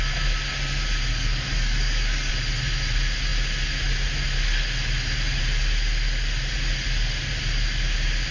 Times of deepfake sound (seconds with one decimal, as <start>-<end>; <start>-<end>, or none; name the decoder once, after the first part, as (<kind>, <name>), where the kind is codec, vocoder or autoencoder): 1.1-2.3 (codec, DAC)